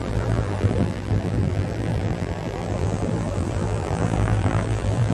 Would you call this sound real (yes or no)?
no